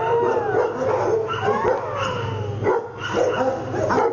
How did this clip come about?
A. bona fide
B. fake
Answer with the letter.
A